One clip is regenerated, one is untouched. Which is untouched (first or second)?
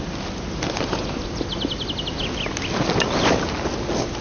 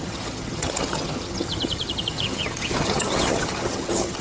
first